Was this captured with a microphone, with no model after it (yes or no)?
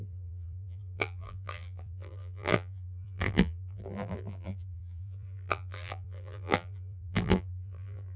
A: no